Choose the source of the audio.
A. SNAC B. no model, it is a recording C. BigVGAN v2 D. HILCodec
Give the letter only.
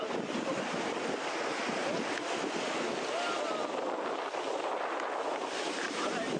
B